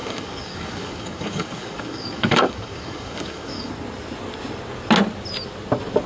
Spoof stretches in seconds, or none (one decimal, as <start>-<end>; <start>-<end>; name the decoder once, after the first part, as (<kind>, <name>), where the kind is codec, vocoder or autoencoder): 0.0-3.7 (codec, DAC)